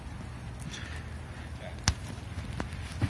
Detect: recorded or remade recorded